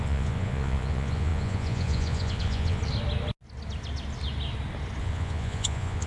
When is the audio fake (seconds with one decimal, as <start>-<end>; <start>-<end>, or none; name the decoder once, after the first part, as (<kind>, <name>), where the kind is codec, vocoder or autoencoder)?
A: 0.0-2.8 (vocoder, Vocos); 5.0-6.1